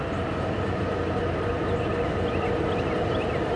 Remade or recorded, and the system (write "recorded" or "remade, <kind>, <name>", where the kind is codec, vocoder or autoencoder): recorded